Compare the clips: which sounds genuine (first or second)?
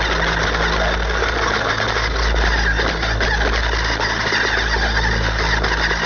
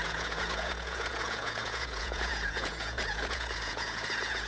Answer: first